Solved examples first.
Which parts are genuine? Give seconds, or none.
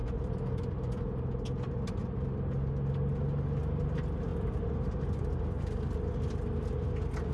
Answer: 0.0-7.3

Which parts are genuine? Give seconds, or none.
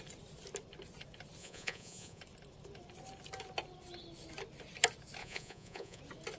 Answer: 0.0-1.4; 2.2-5.2; 6.0-6.4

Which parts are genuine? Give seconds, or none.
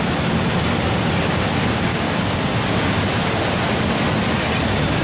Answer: 0.0-1.9; 2.4-5.0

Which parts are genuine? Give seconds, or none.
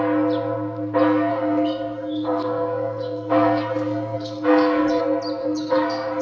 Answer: 0.0-1.3; 5.0-5.4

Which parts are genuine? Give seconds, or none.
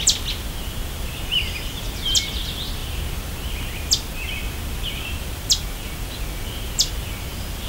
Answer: 0.0-7.7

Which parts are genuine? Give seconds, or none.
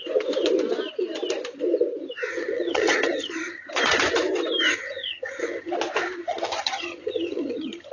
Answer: 0.0-2.3; 3.7-4.7; 5.7-6.2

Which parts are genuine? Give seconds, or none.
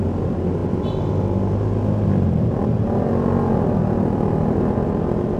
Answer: 0.0-5.4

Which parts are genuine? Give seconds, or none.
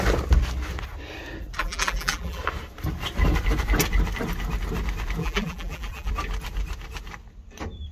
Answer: 0.0-1.6; 2.4-5.2; 6.1-7.9